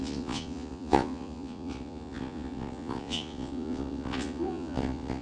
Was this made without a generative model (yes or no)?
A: no